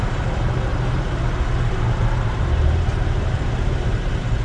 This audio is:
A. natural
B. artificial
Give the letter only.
B